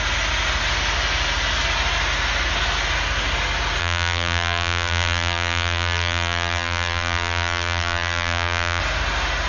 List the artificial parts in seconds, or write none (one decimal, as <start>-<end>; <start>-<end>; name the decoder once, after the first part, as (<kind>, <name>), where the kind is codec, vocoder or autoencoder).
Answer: 3.8-8.8 (vocoder, BigVGAN v2)